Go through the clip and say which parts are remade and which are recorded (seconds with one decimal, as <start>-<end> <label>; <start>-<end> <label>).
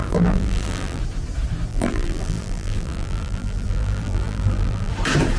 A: 0.0-1.0 remade; 1.0-1.7 recorded; 1.7-4.9 remade; 4.9-5.4 recorded